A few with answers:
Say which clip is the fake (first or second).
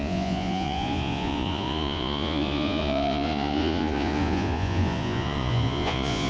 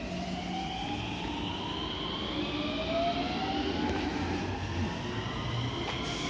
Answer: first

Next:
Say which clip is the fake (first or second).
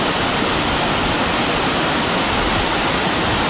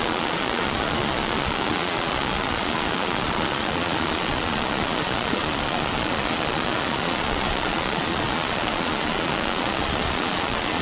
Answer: second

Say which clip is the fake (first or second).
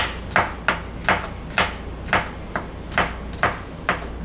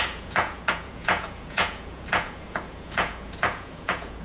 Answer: second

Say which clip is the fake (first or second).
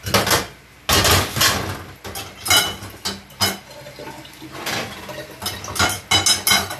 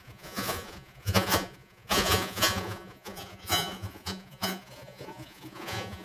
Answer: second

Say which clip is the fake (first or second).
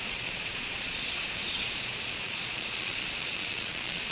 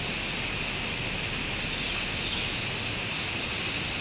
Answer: first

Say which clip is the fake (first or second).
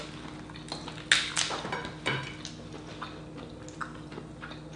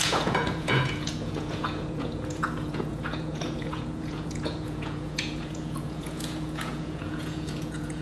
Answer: second